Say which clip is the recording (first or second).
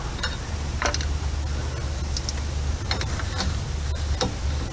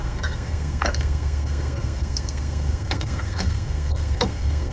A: first